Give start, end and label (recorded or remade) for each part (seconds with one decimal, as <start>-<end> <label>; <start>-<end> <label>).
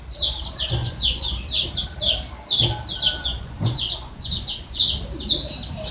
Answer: 0.0-0.8 recorded; 0.8-1.3 remade; 1.3-3.2 recorded; 3.2-4.8 remade; 4.8-5.9 recorded